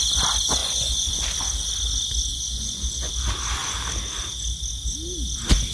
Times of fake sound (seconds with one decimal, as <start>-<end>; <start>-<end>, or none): 0.6-1.2; 2.3-3.1